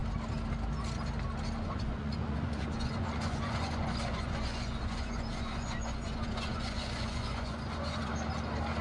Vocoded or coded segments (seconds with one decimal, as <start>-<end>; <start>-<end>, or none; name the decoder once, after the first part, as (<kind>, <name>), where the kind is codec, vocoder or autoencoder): 1.6-8.1 (vocoder, Vocos)